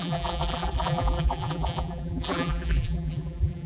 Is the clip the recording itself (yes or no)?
no